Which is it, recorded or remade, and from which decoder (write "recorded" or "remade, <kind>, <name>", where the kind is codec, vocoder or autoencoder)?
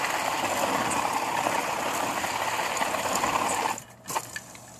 recorded